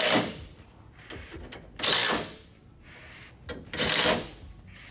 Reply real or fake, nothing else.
real